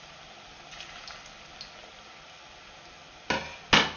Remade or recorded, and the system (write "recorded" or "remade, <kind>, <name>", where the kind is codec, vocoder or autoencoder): recorded